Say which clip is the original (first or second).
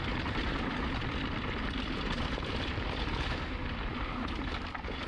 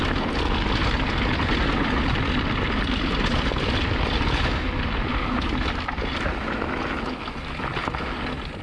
second